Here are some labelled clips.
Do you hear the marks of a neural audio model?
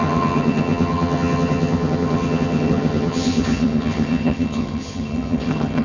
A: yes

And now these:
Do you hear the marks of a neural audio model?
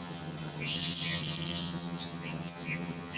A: yes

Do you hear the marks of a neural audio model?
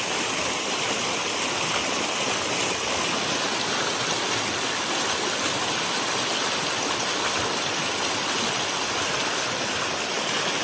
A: no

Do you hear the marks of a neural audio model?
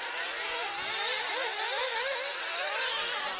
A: no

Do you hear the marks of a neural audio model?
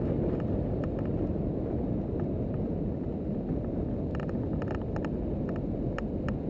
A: no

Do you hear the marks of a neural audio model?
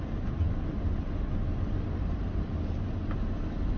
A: no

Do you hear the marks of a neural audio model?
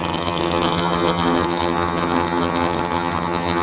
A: yes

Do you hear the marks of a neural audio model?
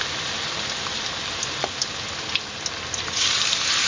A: no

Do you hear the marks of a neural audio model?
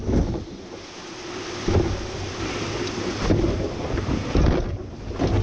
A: no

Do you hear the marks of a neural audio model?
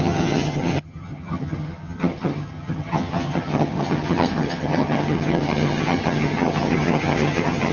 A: yes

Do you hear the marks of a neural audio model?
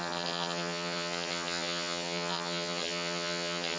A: yes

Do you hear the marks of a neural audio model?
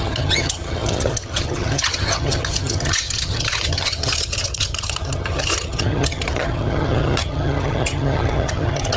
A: yes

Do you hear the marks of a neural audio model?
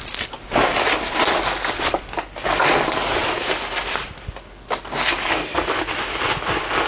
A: no